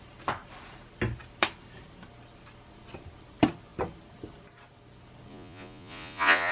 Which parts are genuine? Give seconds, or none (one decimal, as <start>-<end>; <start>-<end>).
0.0-5.3